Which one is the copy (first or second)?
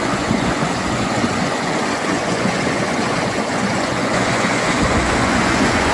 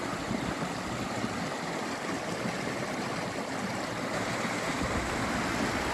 first